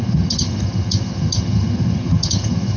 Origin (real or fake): fake